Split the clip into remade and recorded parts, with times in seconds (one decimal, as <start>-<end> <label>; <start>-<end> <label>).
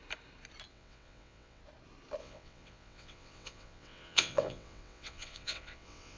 0.0-0.7 recorded; 0.7-1.6 remade; 1.6-2.2 recorded; 2.2-6.2 remade